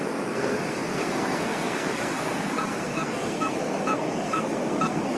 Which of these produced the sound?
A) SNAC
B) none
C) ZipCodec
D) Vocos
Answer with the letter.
A